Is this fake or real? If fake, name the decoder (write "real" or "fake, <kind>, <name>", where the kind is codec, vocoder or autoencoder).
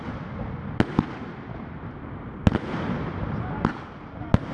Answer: real